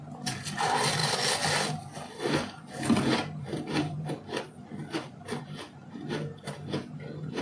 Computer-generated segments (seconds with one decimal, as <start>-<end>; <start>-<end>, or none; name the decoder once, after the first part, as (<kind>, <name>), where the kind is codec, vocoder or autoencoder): none